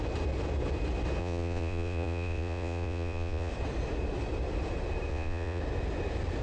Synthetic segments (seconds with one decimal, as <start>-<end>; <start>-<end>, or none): 1.2-3.5; 5.1-5.6